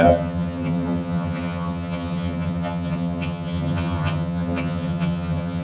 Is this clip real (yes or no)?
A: no